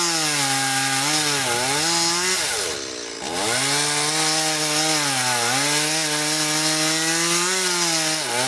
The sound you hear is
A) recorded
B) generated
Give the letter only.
A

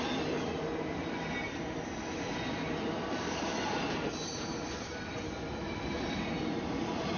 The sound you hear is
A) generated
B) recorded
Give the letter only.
B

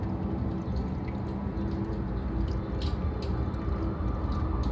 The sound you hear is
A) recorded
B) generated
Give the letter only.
A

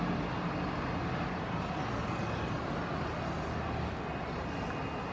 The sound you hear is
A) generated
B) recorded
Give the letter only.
B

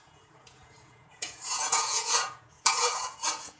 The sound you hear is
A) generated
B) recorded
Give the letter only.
A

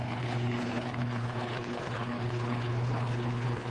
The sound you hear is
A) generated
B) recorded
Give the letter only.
A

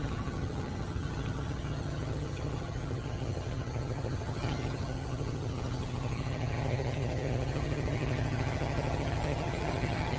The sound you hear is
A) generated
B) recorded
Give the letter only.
A